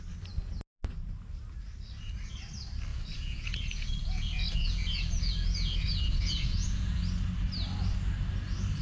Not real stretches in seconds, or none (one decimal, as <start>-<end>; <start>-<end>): 2.9-7.0